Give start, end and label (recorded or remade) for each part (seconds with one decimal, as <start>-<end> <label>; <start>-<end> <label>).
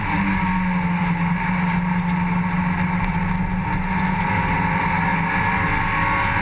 0.0-6.4 recorded